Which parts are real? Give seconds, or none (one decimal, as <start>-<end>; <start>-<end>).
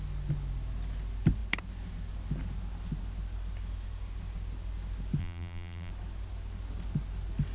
0.0-5.2; 5.9-7.5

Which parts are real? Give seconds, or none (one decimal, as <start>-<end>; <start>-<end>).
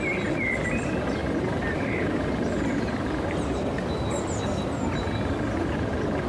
0.0-1.2; 4.4-6.3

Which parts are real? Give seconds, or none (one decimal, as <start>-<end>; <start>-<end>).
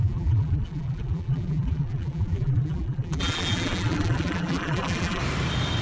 5.2-5.8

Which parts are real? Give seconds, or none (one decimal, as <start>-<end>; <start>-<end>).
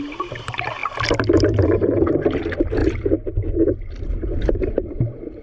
0.8-1.6; 2.8-3.9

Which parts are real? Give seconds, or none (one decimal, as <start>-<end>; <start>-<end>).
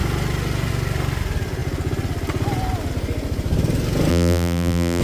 0.0-4.1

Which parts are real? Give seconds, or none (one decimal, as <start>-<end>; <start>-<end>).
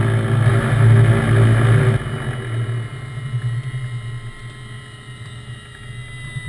0.0-6.5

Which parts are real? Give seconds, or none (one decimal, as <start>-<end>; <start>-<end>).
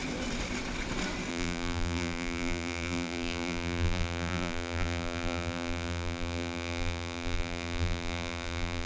0.0-1.3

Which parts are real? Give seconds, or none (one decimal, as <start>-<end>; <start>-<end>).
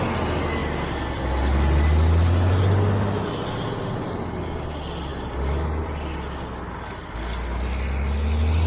0.0-8.7